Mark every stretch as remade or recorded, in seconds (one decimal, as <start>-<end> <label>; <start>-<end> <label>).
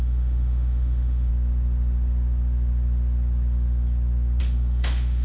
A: 0.0-1.3 remade; 1.3-4.4 recorded; 4.4-5.2 remade